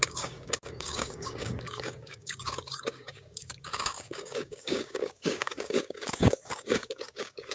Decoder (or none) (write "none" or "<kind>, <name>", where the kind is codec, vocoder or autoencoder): codec, DAC